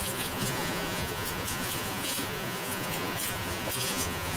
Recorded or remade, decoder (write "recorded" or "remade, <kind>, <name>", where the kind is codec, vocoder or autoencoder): remade, vocoder, Vocos